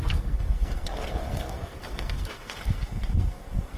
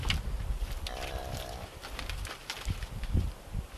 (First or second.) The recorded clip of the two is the second